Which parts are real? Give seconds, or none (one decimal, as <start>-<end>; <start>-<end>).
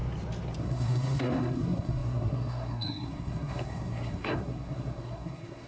0.0-0.6